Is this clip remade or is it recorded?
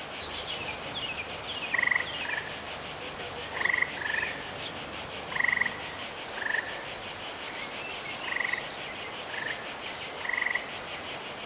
recorded